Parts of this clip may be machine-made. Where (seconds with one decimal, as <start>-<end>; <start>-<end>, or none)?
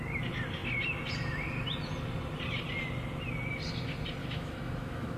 4.2-5.2